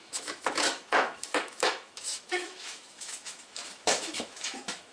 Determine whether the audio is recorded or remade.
remade